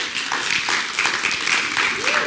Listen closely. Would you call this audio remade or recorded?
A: recorded